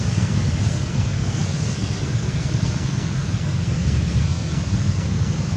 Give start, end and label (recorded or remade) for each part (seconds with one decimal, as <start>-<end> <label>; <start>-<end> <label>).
0.0-5.6 remade